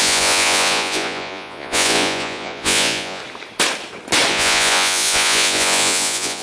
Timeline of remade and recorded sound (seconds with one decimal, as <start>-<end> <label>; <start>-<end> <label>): 0.0-3.2 remade; 3.2-4.3 recorded; 4.3-6.4 remade